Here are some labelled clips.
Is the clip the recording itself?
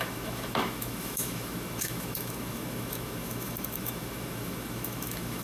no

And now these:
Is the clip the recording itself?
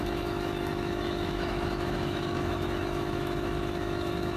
no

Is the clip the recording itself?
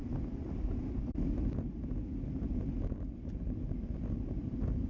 yes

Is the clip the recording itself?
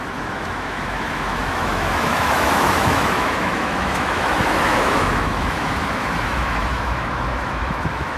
no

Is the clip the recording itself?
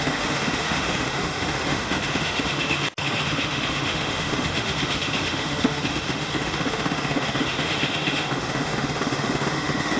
no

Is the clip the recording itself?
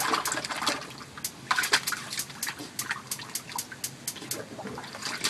yes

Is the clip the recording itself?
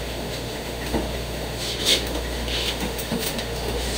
no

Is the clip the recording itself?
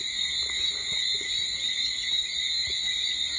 yes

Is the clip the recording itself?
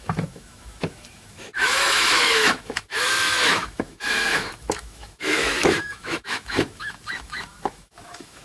no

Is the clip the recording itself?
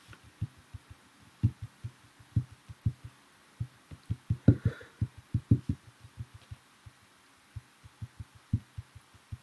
yes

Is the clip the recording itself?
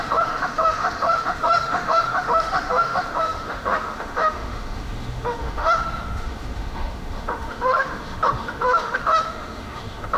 no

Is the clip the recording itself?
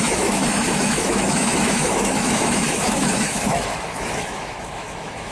no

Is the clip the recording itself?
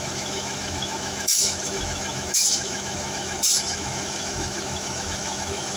no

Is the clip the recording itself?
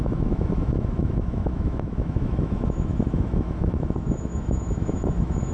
no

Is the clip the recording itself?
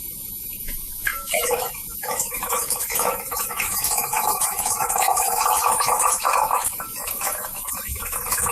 no